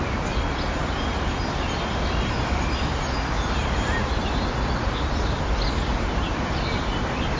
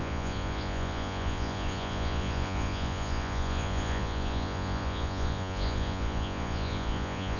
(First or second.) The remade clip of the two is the second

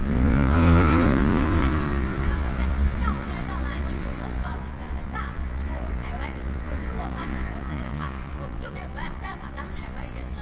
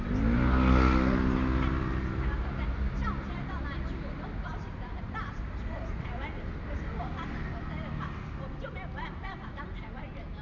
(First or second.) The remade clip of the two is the first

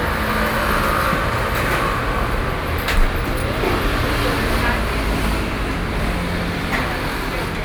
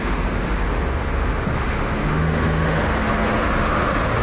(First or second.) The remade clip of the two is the second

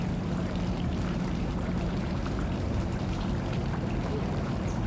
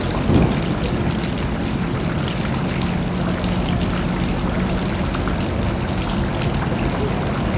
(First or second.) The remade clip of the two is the first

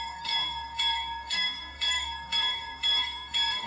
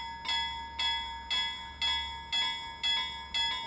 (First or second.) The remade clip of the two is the first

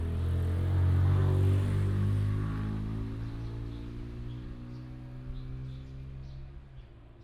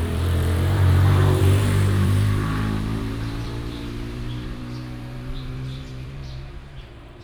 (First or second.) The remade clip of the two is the second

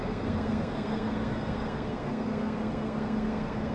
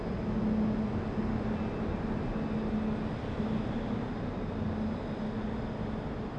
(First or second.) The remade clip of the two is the first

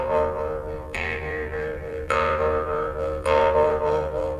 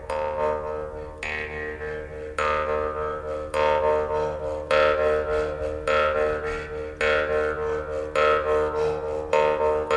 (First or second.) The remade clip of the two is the first